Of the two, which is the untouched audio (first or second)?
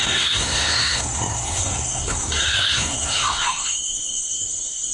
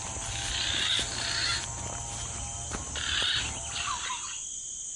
second